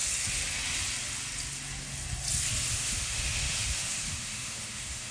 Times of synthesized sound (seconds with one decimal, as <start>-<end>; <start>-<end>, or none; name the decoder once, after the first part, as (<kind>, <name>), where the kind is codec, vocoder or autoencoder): 2.7-5.1 (autoencoder, DAC-VAE)